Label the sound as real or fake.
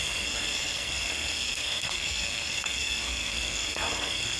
fake